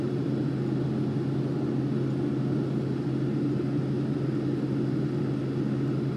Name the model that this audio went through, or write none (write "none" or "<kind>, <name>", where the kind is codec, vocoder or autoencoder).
none